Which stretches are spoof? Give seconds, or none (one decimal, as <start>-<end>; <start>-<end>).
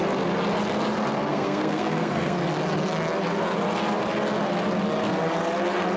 1.3-2.4